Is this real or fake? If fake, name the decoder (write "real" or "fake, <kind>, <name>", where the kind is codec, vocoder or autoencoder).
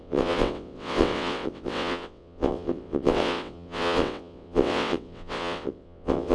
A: fake, vocoder, WaveNeXt